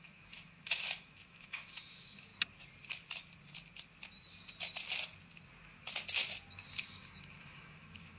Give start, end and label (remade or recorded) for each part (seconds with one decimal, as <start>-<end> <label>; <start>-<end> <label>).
0.0-2.3 remade; 2.3-6.8 recorded; 6.8-8.2 remade